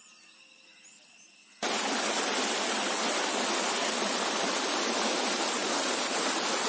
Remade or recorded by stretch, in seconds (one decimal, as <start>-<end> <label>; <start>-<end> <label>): 0.0-4.0 recorded; 4.0-5.6 remade; 5.6-6.2 recorded; 6.2-6.7 remade